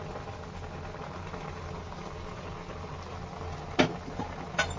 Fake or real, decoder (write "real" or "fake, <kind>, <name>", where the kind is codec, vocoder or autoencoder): real